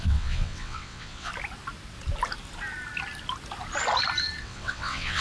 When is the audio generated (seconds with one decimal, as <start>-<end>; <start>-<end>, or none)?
0.0-1.3; 4.4-5.2